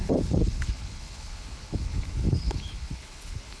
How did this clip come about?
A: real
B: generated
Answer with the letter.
B